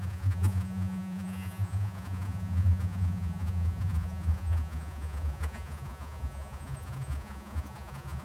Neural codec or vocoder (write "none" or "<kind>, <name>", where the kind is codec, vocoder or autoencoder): vocoder, Vocos